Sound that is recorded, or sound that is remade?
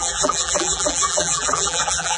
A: remade